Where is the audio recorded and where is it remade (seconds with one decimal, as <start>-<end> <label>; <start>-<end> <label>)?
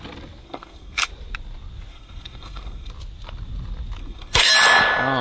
0.0-0.4 recorded; 0.4-1.1 remade; 1.1-1.9 recorded; 1.9-2.9 remade; 2.9-4.0 recorded; 4.0-4.5 remade; 4.5-5.2 recorded